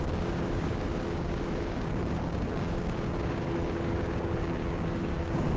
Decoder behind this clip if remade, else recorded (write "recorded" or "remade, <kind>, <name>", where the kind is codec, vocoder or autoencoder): remade, codec, DAC